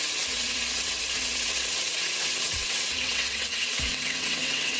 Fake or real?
fake